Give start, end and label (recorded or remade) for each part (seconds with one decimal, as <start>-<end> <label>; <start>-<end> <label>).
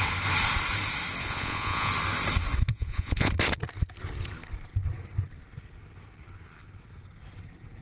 0.0-1.2 recorded; 1.2-1.9 remade; 1.9-2.7 recorded; 2.7-3.3 remade; 3.3-7.8 recorded